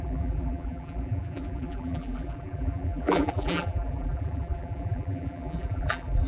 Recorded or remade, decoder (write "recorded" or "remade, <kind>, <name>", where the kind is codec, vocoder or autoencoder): remade, vocoder, BigVGAN v2